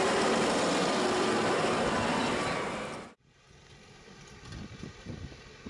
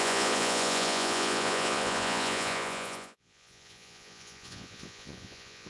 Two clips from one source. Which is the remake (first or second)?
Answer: second